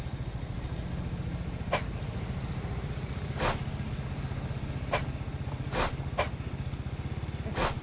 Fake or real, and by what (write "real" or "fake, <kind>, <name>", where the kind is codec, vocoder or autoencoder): real